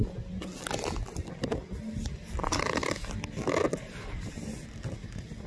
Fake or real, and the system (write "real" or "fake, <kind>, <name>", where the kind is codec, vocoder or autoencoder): real